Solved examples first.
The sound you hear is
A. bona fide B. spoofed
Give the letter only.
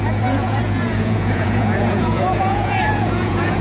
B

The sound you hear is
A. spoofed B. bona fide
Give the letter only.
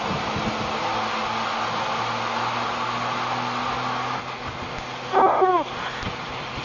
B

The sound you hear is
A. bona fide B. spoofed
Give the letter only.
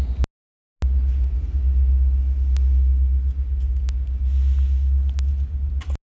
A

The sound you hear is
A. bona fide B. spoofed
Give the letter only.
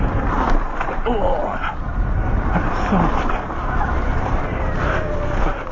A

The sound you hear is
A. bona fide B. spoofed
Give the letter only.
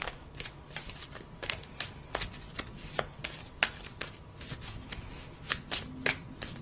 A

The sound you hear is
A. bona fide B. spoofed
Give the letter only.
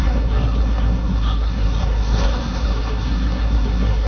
B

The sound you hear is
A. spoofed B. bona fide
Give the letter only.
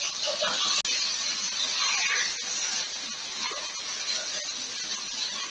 B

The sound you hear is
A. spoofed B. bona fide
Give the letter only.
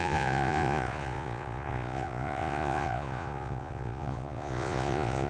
A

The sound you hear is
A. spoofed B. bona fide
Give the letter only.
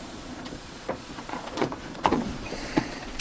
A